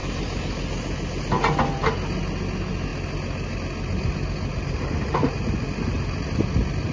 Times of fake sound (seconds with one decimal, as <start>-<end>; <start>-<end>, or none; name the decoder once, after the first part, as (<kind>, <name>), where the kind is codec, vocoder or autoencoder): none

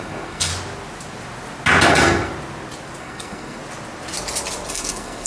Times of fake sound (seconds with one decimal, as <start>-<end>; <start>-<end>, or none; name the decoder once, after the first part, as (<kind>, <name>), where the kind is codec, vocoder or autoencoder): 0.0-0.5 (codec, SNAC); 1.9-2.3; 3.0-3.6; 4.7-5.3

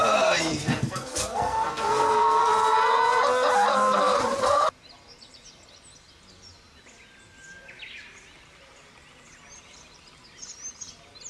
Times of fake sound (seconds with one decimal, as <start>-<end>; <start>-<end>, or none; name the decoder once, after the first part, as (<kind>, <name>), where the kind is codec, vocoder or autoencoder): 0.5-2.4 (codec, SNAC); 3.7-4.2

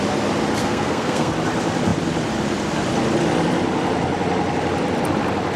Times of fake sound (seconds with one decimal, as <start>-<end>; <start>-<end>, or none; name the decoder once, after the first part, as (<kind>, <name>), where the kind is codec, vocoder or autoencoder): 0.6-1.3 (codec, SNAC)

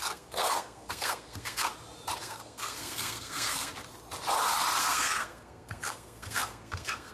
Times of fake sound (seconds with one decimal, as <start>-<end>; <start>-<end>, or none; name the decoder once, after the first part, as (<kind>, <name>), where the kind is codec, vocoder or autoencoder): 0.0-1.7 (codec, SNAC); 2.2-3.7; 4.8-7.1

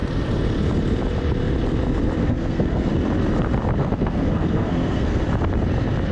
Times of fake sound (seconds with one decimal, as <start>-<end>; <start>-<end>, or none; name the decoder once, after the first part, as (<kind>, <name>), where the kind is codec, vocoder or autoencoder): 2.2-2.9 (codec, SNAC); 3.8-5.2